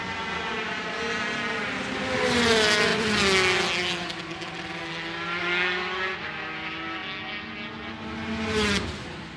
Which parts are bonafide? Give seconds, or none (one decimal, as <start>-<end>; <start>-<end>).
0.0-9.4